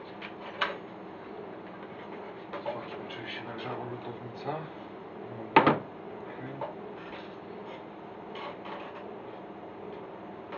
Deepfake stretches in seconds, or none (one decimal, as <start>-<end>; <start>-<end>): none